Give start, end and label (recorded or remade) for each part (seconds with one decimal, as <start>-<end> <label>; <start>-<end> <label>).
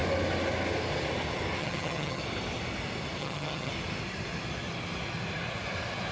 0.0-1.6 recorded; 1.6-2.2 remade; 2.2-3.2 recorded; 3.2-3.7 remade; 3.7-6.1 recorded